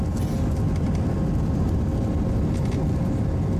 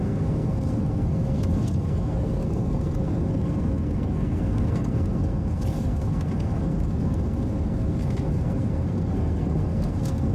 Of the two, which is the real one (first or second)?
first